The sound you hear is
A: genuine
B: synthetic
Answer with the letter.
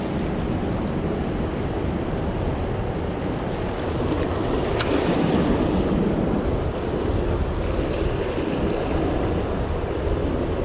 A